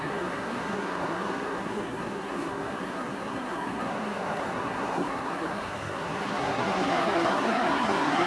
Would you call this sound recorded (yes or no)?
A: no